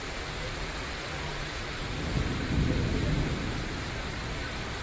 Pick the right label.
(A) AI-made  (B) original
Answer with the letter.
A